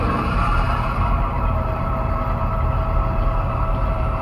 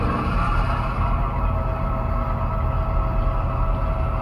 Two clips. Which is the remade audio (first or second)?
first